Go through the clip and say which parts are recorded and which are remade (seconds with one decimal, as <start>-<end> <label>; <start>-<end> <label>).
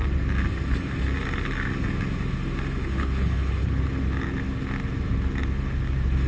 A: 0.0-2.8 recorded; 2.8-3.8 remade; 3.8-6.3 recorded